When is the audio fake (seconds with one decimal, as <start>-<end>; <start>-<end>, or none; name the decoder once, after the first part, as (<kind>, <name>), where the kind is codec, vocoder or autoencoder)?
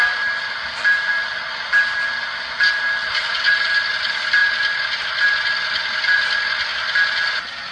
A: none